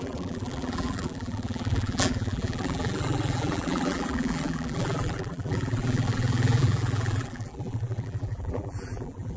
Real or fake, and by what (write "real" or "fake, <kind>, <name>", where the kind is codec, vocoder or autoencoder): fake, vocoder, BigVGAN v2